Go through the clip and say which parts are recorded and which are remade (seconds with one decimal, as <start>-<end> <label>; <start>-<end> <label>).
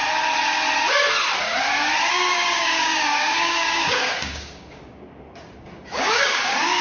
0.0-2.1 recorded; 2.1-6.8 remade